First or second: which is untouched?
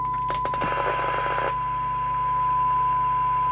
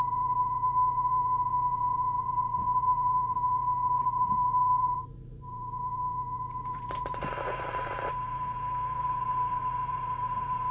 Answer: first